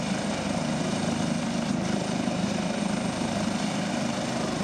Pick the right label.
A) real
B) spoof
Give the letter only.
A